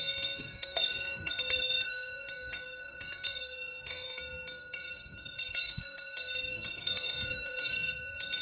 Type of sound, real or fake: fake